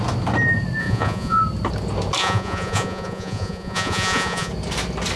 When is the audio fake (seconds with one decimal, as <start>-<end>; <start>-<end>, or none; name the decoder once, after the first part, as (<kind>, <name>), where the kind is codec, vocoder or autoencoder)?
0.8-1.4 (vocoder, Vocos); 2.2-4.5